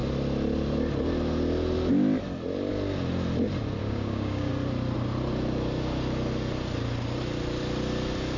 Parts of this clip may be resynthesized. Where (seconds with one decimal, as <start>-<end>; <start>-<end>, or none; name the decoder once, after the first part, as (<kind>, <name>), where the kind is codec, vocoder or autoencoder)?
3.8-4.5 (codec, DAC)